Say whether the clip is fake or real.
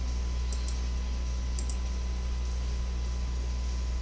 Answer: real